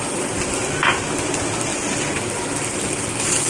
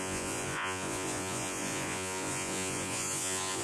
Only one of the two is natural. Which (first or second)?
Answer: first